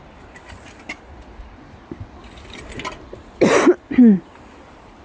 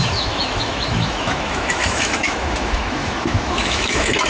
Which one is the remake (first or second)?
second